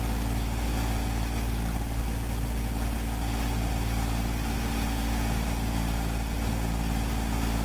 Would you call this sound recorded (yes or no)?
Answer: yes